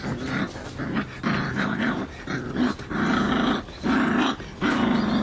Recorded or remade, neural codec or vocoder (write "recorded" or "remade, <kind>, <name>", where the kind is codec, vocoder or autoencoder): recorded